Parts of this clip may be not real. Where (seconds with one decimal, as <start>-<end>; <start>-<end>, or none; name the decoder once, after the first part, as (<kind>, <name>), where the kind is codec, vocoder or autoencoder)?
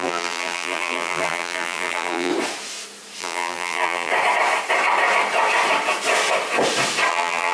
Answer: 0.0-2.3 (vocoder, BigVGAN v2); 3.2-4.1; 7.1-7.5